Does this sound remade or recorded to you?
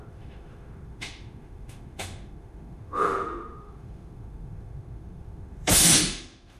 remade